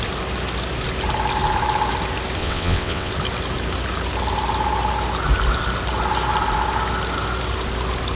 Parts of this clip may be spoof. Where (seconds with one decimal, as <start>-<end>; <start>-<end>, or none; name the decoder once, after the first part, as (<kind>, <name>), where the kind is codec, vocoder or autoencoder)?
2.4-3.1 (vocoder, WaveNeXt)